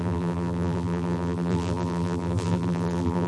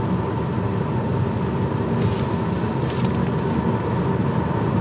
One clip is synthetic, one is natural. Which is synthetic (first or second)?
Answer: first